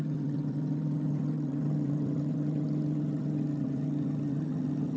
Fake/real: fake